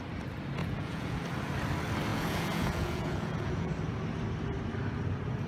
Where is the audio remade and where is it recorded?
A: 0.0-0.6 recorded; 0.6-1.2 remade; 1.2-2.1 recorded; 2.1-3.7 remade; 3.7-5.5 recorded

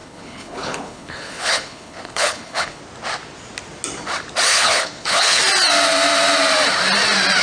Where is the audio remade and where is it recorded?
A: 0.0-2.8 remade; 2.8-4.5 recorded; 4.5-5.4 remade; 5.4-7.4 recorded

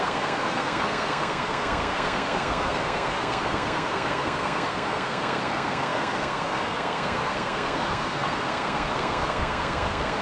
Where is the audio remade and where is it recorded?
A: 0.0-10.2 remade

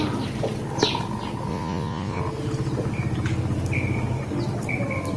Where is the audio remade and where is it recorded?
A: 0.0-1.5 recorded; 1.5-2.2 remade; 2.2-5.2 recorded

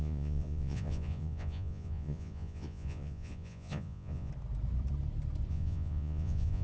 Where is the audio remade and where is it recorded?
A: 0.0-4.3 remade; 4.3-5.5 recorded; 5.5-6.6 remade